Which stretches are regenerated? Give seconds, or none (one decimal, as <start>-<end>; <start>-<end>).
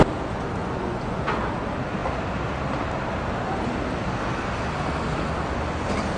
0.6-1.2